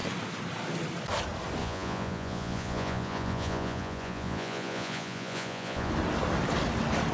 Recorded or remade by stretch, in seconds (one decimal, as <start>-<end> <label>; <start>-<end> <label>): 0.0-1.6 recorded; 1.6-5.9 remade; 5.9-7.1 recorded